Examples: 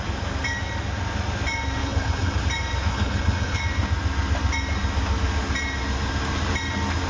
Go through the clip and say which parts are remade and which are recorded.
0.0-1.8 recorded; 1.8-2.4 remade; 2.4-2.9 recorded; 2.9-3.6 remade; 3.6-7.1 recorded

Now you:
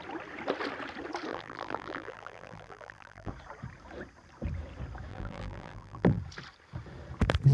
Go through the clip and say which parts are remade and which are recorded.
0.0-1.3 recorded; 1.3-3.3 remade; 3.3-5.1 recorded; 5.1-6.2 remade; 6.2-7.5 recorded